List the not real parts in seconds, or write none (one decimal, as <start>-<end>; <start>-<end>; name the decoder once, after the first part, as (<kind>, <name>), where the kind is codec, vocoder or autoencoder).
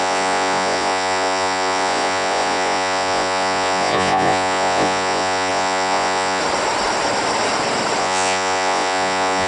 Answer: 0.0-6.4 (vocoder, Vocos); 8.0-9.5